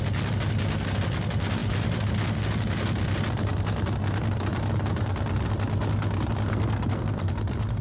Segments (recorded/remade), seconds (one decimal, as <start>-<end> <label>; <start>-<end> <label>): 0.0-6.5 recorded; 6.5-7.3 remade; 7.3-7.8 recorded